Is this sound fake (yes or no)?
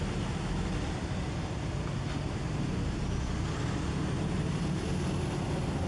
no